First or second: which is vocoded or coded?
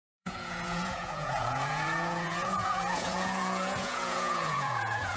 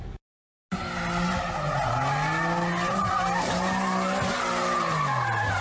first